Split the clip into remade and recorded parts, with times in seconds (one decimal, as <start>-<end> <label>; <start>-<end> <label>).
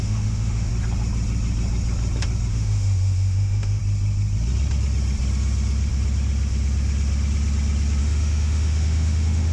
0.0-0.7 remade; 0.7-2.5 recorded; 2.5-3.8 remade; 3.8-8.0 recorded; 8.0-9.5 remade